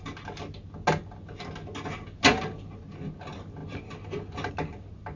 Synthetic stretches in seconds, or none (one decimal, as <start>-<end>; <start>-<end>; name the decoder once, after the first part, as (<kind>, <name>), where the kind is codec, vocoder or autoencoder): none